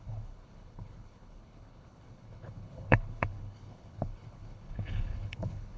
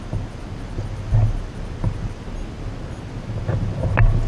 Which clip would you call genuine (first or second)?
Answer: second